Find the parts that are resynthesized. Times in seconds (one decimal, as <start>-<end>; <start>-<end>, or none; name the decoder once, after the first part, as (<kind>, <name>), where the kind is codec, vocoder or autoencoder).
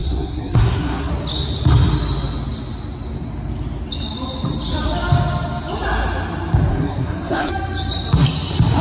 0.0-1.1 (codec, SNAC); 6.7-7.5